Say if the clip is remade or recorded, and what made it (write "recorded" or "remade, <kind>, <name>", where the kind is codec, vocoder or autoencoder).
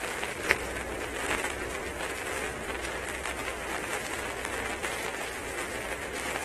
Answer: recorded